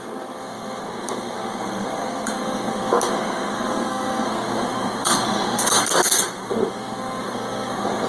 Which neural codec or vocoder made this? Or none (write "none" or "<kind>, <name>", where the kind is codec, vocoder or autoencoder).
codec, SNAC